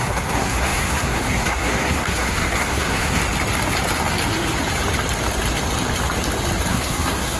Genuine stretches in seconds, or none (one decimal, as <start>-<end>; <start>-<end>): 3.2-6.7